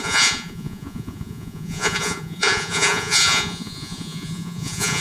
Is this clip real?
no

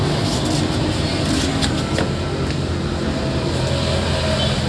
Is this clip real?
yes